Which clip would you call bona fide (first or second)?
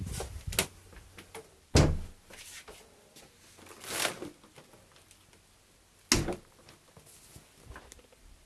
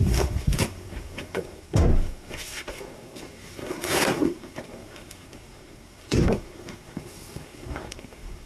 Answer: first